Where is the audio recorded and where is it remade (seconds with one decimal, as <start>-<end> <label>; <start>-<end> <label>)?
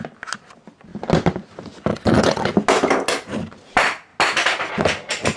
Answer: 0.0-1.9 recorded; 1.9-2.5 remade; 2.5-5.4 recorded